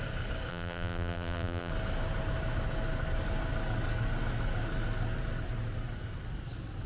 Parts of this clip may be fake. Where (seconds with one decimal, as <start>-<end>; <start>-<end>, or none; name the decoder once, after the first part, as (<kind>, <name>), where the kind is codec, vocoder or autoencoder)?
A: 0.5-1.7 (vocoder, BigVGAN v2)